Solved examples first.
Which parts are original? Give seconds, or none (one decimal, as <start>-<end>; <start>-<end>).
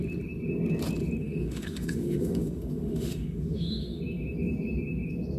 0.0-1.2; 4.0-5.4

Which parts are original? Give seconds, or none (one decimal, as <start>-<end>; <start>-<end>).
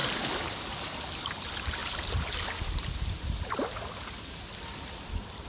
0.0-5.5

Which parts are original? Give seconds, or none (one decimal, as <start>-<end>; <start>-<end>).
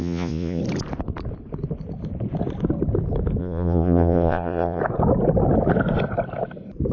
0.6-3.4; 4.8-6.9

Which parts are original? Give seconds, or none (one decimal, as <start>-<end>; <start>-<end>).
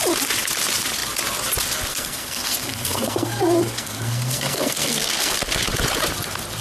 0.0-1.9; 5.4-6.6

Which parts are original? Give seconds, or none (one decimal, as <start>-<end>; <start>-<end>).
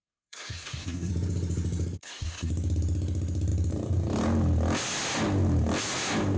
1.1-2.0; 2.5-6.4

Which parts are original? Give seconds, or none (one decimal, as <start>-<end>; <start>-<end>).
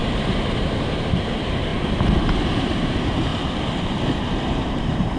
0.0-0.6; 1.7-2.3; 3.3-3.8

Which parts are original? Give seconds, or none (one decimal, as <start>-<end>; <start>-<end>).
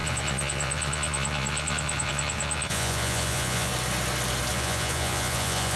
3.7-4.5